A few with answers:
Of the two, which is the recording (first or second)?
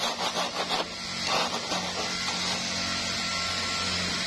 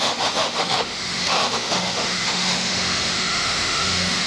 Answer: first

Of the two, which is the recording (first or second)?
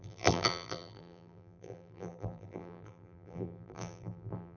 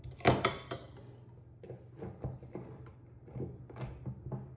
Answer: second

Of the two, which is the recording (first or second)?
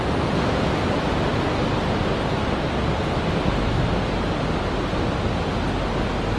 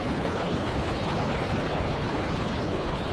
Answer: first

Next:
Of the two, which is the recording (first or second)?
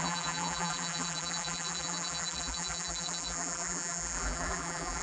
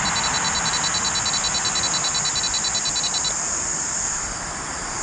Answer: second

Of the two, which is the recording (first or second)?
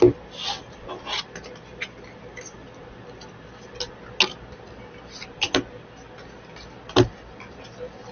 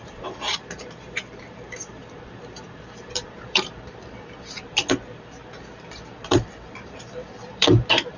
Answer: first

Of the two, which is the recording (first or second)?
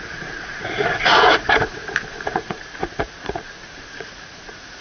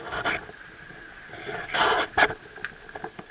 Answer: second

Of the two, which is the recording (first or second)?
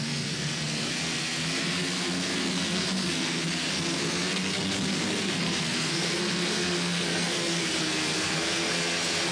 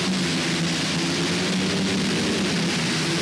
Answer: second